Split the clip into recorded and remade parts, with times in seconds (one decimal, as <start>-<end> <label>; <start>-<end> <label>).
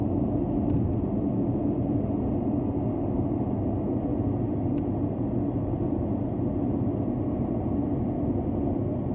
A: 0.0-9.1 recorded